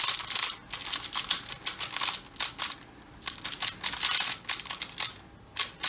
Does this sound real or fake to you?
real